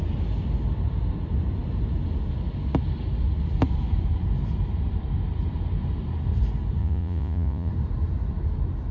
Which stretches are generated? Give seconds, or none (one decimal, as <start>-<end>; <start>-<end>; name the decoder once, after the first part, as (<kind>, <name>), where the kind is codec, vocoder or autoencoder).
6.8-7.7 (vocoder, Vocos)